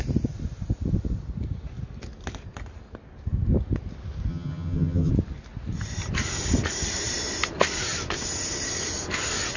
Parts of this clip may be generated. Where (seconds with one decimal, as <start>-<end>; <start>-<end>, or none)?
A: 4.3-5.1